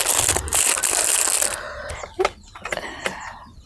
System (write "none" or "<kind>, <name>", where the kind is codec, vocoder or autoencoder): none